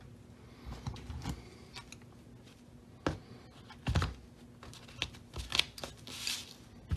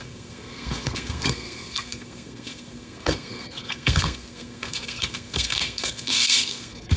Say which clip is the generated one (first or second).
second